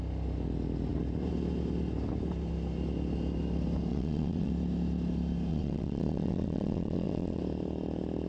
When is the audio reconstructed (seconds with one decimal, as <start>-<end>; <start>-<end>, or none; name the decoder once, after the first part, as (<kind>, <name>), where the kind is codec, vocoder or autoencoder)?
3.9-4.5 (vocoder, WaveNeXt); 5.5-7.4